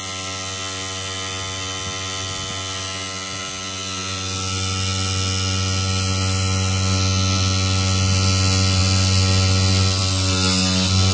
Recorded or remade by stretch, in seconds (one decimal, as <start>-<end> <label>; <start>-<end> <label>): 0.0-11.1 recorded